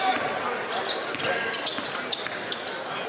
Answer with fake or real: real